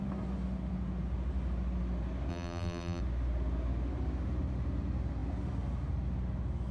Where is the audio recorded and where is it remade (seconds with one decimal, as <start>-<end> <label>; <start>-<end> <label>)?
0.0-2.3 recorded; 2.3-3.0 remade; 3.0-6.7 recorded